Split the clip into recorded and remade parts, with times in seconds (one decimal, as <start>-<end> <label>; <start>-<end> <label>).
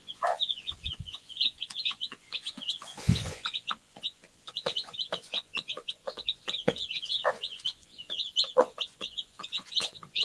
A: 0.0-10.2 remade